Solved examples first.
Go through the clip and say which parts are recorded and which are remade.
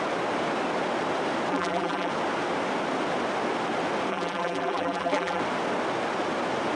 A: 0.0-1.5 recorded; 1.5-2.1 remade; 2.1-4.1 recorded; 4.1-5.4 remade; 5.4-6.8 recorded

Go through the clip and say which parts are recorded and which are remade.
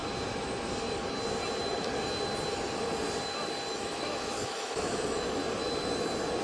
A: 0.0-3.7 recorded; 3.7-5.4 remade; 5.4-6.4 recorded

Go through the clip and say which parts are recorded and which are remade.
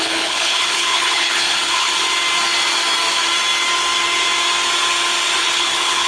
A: 0.0-1.9 remade; 1.9-5.4 recorded; 5.4-6.1 remade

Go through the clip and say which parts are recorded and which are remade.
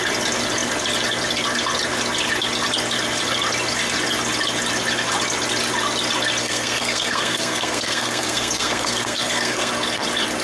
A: 0.0-6.4 recorded; 6.4-9.7 remade; 9.7-10.4 recorded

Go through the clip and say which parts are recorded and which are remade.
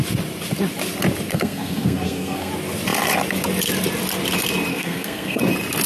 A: 0.0-1.3 recorded; 1.3-2.5 remade; 2.5-4.7 recorded; 4.7-5.4 remade; 5.4-5.9 recorded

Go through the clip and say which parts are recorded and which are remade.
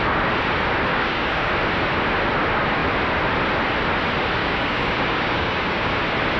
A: 0.0-0.9 recorded; 0.9-1.5 remade; 1.5-4.4 recorded; 4.4-5.9 remade; 5.9-6.4 recorded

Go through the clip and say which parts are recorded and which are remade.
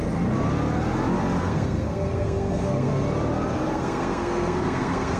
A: 0.0-1.4 recorded; 1.4-2.9 remade; 2.9-3.7 recorded; 3.7-5.2 remade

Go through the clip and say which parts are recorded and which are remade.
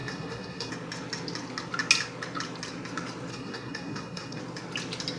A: 0.0-0.7 remade; 0.7-3.3 recorded; 3.3-4.4 remade; 4.4-5.2 recorded